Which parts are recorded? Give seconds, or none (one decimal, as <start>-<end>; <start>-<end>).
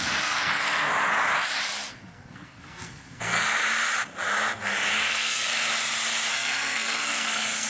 0.9-1.9; 3.6-5.0; 5.5-6.3